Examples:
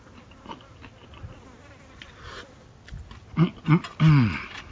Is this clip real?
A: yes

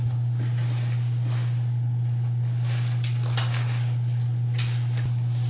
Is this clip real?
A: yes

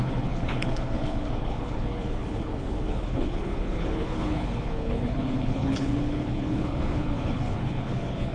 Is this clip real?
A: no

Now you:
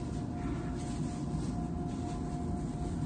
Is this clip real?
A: yes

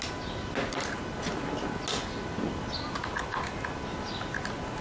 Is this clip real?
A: yes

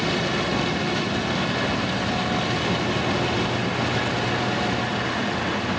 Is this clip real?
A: yes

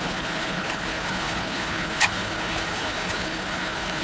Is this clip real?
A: no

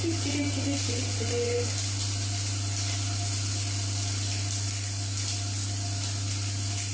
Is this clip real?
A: yes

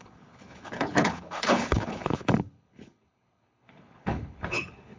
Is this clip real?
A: no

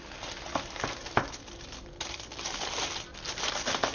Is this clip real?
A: yes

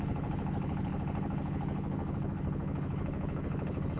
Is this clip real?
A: no